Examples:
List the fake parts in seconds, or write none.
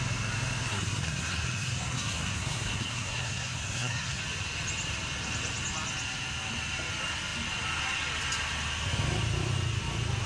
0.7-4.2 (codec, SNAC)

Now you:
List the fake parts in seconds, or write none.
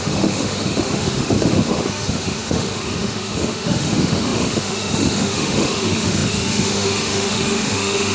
0.0-8.1 (autoencoder, DAC-VAE)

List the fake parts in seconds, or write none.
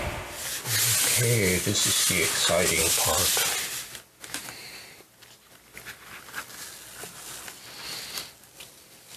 none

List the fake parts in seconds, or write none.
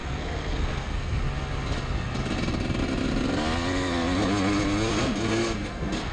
0.0-1.2 (codec, SNAC); 4.9-6.1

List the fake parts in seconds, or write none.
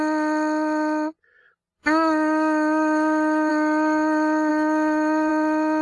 1.8-3.5 (autoencoder, DAC-VAE); 4.5-5.3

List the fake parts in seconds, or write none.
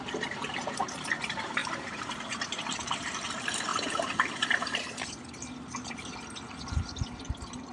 0.0-7.7 (vocoder, BigVGAN v2)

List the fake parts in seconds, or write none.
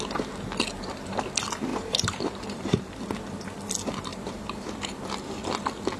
1.7-2.8 (vocoder, BigVGAN v2); 4.1-4.7